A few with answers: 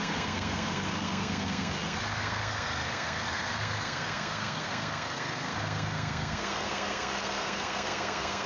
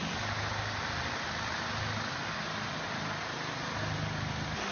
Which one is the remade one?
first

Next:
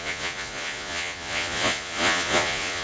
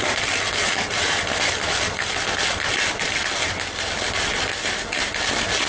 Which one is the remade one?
first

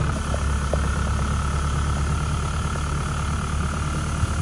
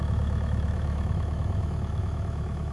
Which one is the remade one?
second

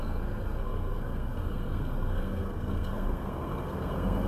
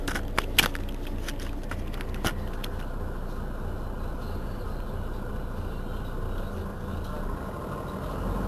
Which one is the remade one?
first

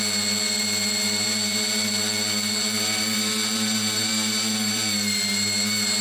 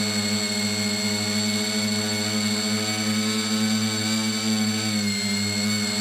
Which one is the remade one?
first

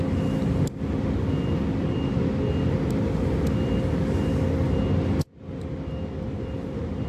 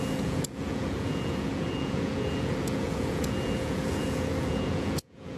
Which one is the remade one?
second